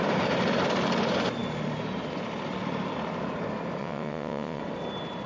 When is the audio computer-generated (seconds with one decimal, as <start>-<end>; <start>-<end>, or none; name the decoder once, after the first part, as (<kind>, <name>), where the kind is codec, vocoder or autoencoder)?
3.8-4.6 (vocoder, WaveNeXt)